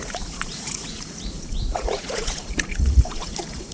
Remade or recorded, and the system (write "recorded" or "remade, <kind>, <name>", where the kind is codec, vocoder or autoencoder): remade, vocoder, Vocos